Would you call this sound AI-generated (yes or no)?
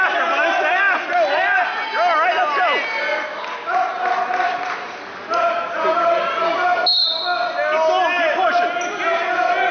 no